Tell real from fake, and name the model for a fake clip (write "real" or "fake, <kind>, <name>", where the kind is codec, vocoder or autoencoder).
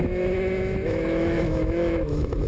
fake, autoencoder, DAC-VAE